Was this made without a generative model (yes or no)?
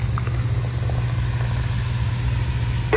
yes